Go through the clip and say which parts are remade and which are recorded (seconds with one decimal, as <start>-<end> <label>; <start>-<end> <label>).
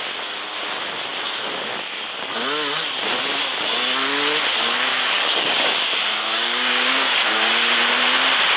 0.0-4.9 recorded; 4.9-7.5 remade; 7.5-8.6 recorded